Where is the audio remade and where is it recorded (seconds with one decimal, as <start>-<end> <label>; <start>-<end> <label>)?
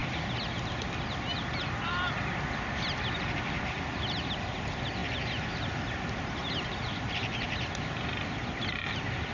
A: 0.0-9.3 recorded